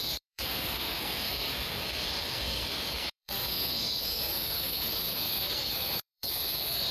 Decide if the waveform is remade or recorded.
remade